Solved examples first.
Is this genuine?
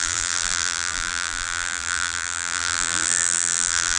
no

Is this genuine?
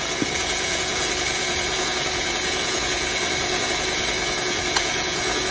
no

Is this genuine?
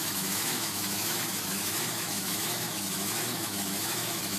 no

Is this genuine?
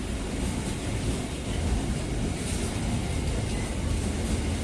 yes